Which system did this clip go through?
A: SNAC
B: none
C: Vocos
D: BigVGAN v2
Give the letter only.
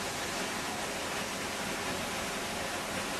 B